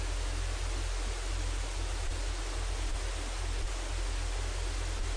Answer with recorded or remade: recorded